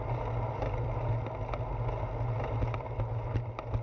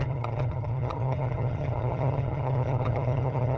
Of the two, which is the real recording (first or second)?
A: first